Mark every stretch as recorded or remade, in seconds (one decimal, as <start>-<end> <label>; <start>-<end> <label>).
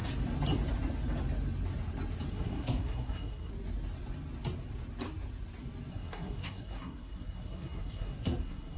0.0-2.3 recorded; 2.3-3.5 remade; 3.5-5.9 recorded; 5.9-8.8 remade